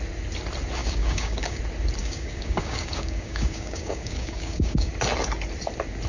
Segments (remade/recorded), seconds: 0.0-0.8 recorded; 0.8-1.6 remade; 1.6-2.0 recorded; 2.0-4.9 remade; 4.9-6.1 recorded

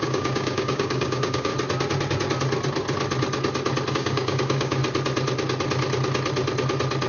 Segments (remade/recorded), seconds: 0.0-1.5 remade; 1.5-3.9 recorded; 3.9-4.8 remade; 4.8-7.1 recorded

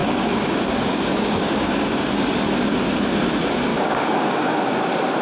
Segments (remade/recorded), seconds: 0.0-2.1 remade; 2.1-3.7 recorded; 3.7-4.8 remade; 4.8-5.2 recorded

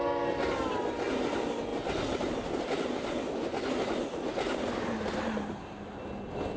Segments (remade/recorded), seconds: 0.0-6.6 recorded